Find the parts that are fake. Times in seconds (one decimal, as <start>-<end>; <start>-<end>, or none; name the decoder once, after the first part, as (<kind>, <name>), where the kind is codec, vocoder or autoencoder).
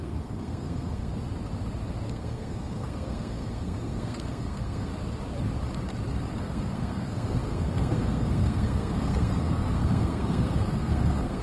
0.0-1.1 (codec, SNAC); 2.1-4.9; 6.4-11.4